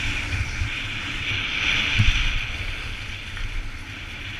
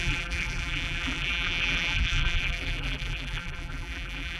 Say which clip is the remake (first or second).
second